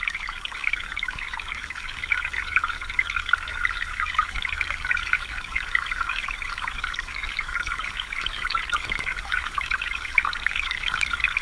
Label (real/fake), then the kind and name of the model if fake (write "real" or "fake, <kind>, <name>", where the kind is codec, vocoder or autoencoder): fake, codec, DAC